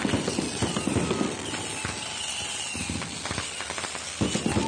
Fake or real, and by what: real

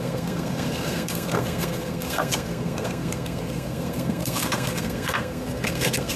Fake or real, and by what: fake, codec, SNAC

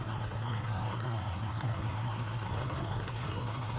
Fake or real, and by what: fake, codec, SNAC